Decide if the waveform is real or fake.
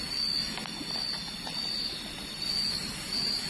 real